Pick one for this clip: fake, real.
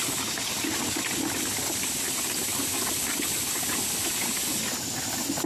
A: real